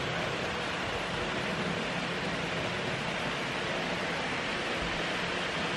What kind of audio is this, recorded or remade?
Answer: recorded